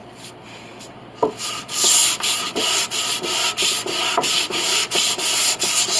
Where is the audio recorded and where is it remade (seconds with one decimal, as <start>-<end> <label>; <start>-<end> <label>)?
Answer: 0.0-6.0 recorded